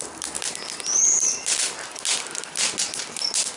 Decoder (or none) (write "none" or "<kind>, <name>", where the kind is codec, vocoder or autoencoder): none